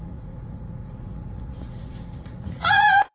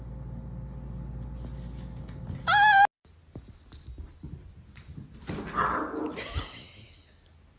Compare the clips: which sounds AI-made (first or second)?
first